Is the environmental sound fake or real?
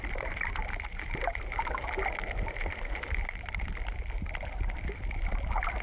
fake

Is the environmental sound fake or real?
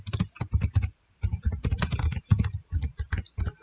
real